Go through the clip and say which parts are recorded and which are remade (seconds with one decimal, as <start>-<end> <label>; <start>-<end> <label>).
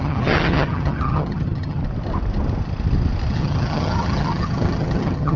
0.0-1.8 remade; 1.8-3.3 recorded; 3.3-5.4 remade